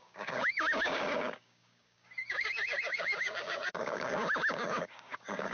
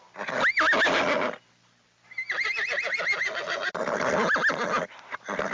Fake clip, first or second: first